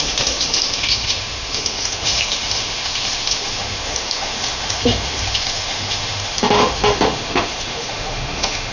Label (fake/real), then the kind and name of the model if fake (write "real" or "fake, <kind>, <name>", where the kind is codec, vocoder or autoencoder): fake, autoencoder, DAC-VAE